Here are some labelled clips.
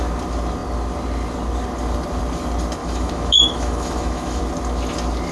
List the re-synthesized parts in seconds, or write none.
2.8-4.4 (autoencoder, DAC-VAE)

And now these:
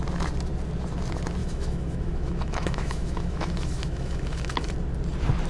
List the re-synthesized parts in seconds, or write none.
1.4-4.7 (autoencoder, DAC-VAE)

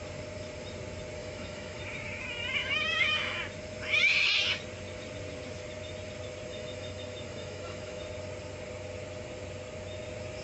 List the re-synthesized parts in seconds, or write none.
1.2-1.8 (autoencoder, DAC-VAE); 2.6-3.4; 6.5-8.0

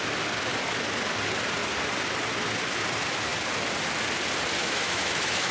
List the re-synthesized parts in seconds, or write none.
4.6-5.5 (autoencoder, DAC-VAE)

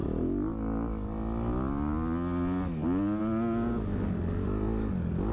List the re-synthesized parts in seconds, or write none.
none